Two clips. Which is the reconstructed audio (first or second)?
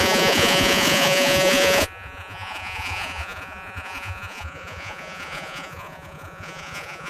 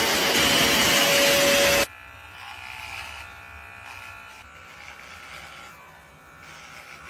first